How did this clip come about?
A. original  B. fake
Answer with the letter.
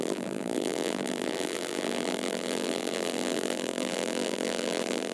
B